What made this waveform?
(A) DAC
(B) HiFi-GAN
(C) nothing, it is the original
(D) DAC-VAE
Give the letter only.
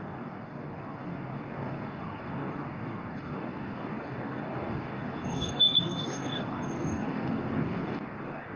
A